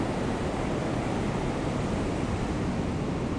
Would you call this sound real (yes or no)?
yes